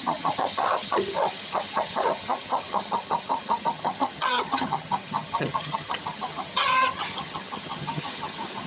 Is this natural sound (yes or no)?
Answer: no